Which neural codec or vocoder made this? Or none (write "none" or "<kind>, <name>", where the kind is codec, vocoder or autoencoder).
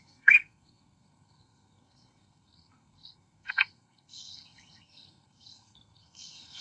codec, SNAC